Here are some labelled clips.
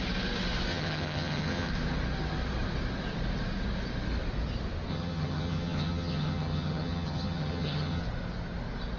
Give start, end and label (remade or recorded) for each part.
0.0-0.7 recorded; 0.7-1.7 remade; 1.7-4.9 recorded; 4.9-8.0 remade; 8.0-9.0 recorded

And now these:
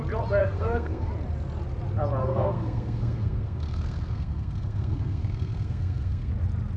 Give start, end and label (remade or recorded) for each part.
0.0-0.4 recorded; 0.4-1.1 remade; 1.1-2.2 recorded; 2.2-6.3 remade; 6.3-6.8 recorded

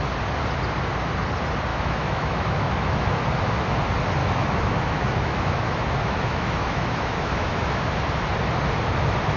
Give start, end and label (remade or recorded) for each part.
0.0-1.7 recorded; 1.7-3.2 remade; 3.2-4.2 recorded; 4.2-7.9 remade; 7.9-9.4 recorded